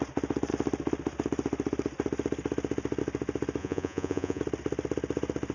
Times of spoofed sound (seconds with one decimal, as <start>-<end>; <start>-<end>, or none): 3.6-4.4